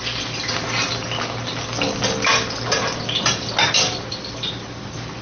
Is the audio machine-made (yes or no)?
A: no